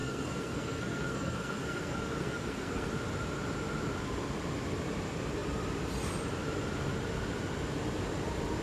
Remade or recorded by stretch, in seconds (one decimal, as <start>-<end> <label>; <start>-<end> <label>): 0.0-2.9 remade; 2.9-8.6 recorded